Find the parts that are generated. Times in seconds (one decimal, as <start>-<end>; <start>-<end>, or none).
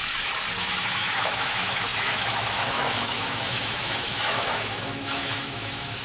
0.6-6.0